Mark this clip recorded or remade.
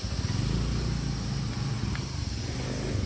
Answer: recorded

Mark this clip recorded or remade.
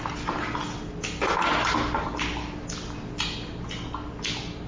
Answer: recorded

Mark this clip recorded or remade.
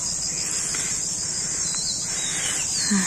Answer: recorded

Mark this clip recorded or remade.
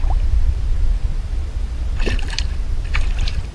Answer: recorded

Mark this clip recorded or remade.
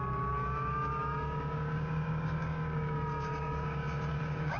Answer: remade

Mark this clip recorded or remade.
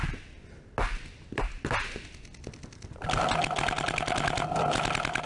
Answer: recorded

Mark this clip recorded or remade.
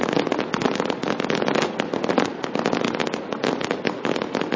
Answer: recorded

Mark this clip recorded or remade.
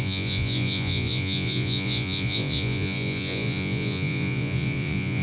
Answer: remade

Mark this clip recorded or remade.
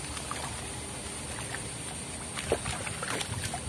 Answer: recorded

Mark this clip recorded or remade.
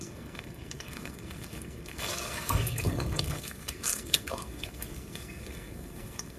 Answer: remade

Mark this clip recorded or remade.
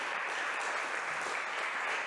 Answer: recorded